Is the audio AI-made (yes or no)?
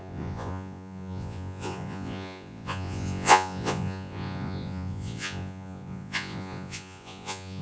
yes